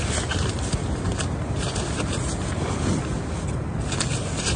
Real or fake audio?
real